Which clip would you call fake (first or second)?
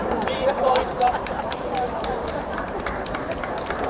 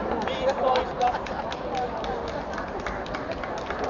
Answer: first